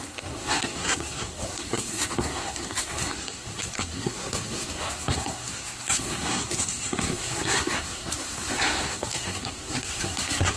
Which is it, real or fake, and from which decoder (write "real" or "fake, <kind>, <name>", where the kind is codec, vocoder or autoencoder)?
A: fake, codec, SNAC